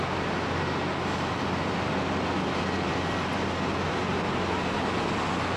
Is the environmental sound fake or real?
real